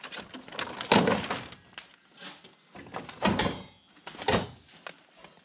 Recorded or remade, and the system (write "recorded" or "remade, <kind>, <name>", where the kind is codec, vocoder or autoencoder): recorded